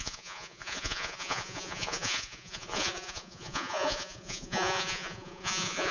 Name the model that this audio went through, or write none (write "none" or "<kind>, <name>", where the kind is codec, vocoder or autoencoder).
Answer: vocoder, Vocos